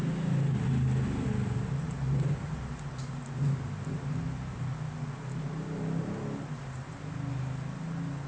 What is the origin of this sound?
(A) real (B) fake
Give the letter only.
A